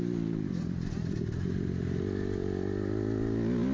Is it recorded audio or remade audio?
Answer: recorded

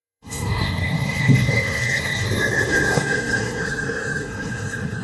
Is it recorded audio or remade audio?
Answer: remade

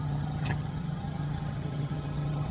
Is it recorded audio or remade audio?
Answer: remade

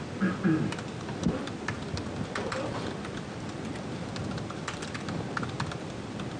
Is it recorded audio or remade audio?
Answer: recorded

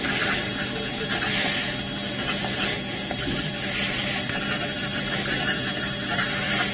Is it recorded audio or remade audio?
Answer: recorded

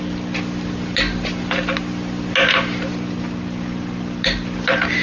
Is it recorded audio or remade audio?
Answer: recorded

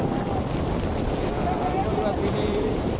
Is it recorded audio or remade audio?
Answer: remade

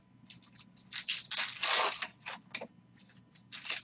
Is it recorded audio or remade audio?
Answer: recorded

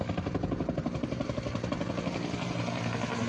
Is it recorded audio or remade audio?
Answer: recorded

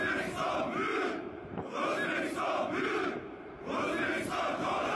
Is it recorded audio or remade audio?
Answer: remade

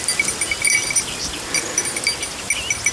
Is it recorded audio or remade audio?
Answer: recorded